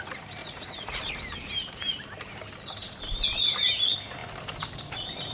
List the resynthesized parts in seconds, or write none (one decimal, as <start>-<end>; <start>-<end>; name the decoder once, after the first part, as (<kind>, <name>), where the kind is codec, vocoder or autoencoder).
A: 0.4-1.0 (vocoder, Vocos)